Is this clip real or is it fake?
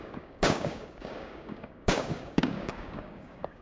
fake